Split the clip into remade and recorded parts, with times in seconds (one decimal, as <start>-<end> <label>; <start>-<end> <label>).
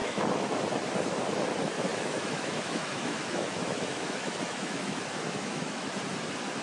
0.0-0.6 remade; 0.6-1.9 recorded; 1.9-5.9 remade; 5.9-6.6 recorded